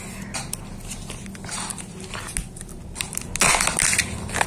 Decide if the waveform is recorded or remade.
recorded